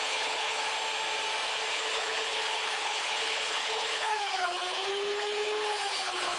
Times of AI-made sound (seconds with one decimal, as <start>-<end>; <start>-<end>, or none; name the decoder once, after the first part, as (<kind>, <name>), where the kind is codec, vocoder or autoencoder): 0.0-0.7 (codec, HILCodec); 1.7-6.4